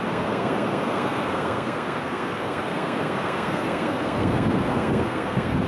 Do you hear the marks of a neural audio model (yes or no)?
yes